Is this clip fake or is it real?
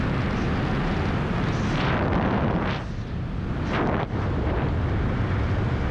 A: real